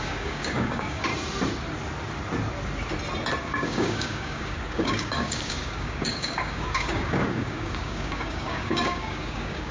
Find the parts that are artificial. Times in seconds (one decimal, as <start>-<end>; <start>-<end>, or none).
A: 0.0-1.1; 3.4-9.7